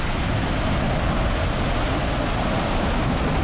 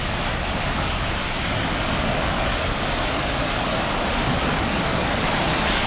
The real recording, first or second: first